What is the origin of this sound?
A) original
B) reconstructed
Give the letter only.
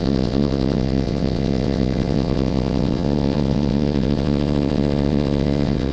B